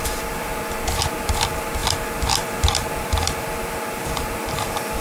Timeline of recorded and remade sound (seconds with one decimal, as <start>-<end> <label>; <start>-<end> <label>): 0.0-0.5 remade; 0.5-1.2 recorded; 1.2-5.0 remade